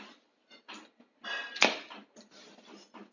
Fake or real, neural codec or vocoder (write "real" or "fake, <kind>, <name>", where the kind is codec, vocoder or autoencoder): real